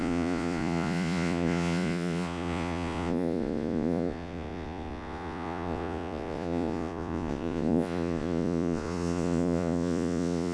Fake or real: fake